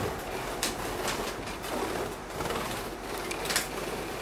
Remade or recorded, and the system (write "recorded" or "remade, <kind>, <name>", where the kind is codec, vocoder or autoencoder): recorded